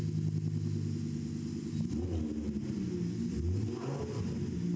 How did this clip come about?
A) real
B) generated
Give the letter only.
A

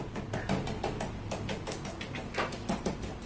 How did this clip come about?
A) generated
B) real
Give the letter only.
B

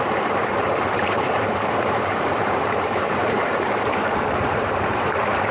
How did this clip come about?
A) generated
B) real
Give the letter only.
A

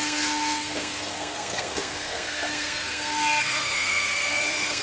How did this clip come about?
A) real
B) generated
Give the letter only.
B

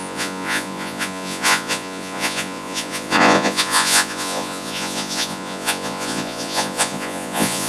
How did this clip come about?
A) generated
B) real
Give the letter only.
A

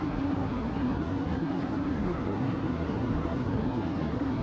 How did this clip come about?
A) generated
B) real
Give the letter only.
A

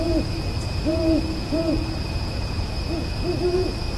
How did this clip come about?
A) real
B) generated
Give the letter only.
B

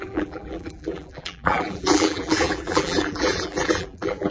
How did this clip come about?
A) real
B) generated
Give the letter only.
B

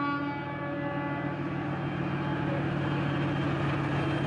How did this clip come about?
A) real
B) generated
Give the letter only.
A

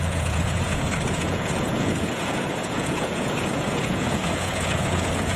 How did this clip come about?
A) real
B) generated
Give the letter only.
B